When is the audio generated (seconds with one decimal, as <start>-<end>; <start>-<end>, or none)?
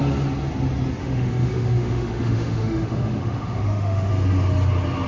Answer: 1.0-4.1